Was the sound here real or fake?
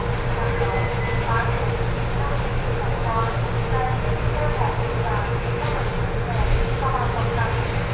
real